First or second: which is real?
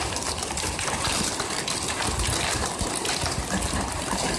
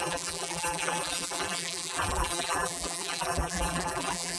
first